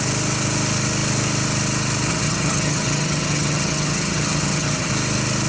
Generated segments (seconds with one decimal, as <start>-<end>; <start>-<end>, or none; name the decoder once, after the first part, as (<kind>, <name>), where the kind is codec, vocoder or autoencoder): 2.1-4.9 (vocoder, HiFi-GAN)